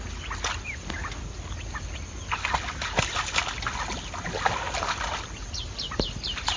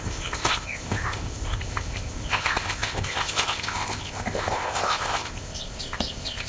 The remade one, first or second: second